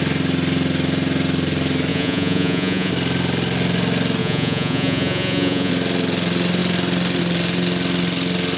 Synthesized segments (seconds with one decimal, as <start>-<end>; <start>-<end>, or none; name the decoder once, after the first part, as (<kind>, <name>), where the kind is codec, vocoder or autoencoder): 1.9-2.9 (vocoder, Vocos); 4.2-5.7